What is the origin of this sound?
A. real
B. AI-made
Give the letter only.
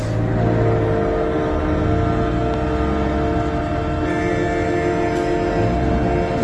A